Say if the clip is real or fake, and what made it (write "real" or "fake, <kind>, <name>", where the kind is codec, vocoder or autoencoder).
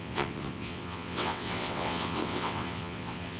fake, vocoder, WaveNeXt